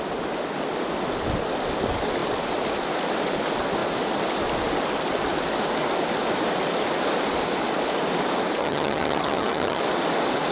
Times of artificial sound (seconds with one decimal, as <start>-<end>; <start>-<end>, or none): 8.6-9.8